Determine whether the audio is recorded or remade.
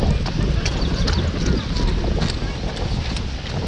recorded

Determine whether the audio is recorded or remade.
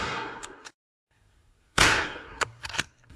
remade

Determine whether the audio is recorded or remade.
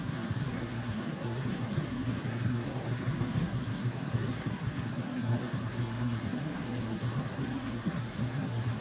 remade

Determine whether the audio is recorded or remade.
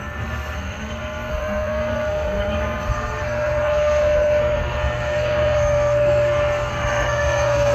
remade